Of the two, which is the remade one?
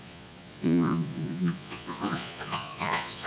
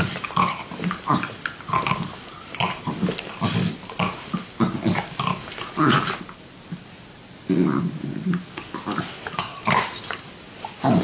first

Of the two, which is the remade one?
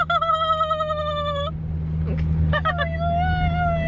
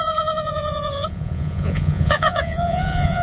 second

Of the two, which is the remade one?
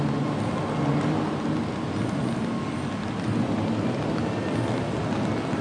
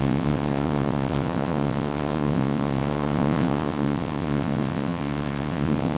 second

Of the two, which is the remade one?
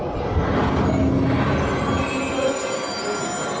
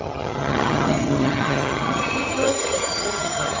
second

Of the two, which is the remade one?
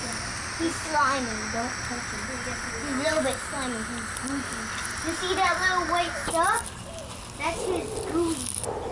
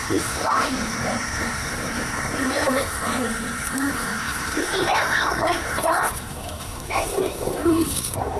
second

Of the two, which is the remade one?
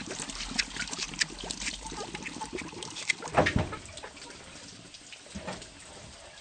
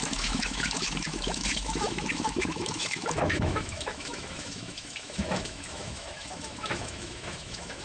second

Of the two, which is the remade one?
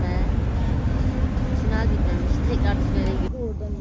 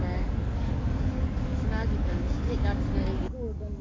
second